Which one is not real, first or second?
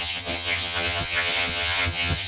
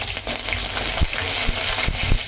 first